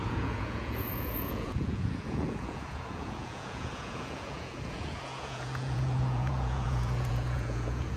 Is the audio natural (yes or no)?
no